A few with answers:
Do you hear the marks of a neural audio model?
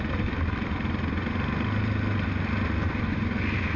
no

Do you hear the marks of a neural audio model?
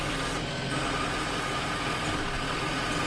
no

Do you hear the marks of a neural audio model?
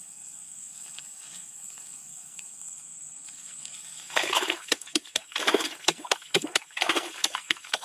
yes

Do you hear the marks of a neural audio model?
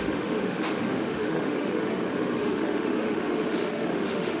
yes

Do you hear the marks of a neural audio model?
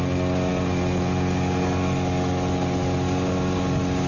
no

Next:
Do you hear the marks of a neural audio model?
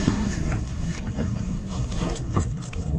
yes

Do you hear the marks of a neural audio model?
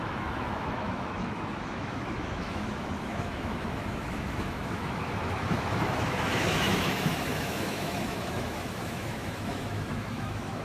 yes